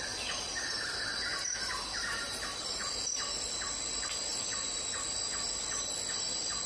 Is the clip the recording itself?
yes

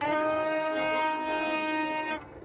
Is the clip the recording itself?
no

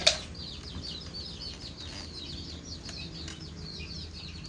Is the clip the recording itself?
yes